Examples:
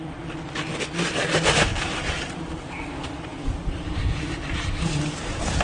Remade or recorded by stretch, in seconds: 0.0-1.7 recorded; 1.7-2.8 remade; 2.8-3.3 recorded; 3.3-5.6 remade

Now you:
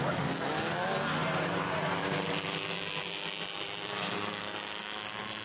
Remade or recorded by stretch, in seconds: 0.0-1.2 recorded; 1.2-4.4 remade; 4.4-5.4 recorded

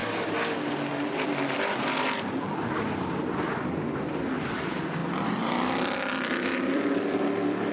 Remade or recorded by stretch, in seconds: 0.0-4.6 recorded; 4.6-7.7 remade

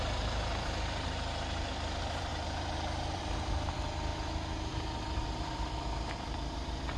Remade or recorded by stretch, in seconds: 0.0-4.1 remade; 4.1-5.4 recorded; 5.4-7.0 remade

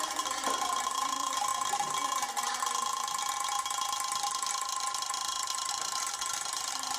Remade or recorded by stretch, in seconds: 0.0-1.5 remade; 1.5-5.7 recorded; 5.7-7.0 remade